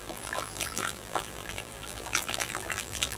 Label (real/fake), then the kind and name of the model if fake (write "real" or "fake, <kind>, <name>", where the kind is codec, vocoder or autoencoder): fake, vocoder, BigVGAN v2